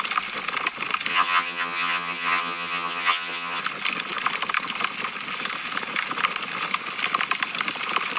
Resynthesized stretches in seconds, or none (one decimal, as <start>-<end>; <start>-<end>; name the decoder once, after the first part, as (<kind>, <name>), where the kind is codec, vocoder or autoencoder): 1.1-3.6 (vocoder, HiFi-GAN)